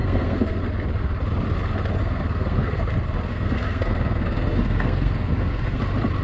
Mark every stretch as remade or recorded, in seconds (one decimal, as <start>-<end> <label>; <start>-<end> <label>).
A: 0.0-0.6 remade; 0.6-2.0 recorded; 2.0-2.8 remade; 2.8-3.3 recorded; 3.3-5.8 remade; 5.8-6.2 recorded